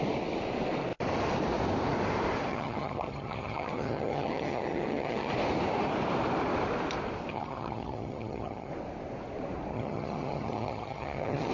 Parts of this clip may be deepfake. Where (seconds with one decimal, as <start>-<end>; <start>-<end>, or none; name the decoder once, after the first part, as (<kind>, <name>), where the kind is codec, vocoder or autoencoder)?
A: 2.5-5.3 (vocoder, HiFi-GAN); 7.3-8.7; 9.7-11.5